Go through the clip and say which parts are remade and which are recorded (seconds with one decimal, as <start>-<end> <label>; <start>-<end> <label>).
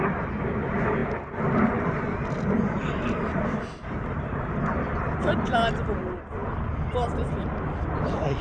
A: 0.0-1.0 recorded; 1.0-5.2 remade; 5.2-6.4 recorded; 6.4-7.5 remade; 7.5-8.4 recorded